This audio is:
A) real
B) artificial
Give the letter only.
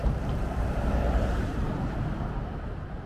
B